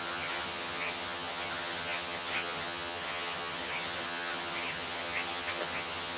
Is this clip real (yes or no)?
no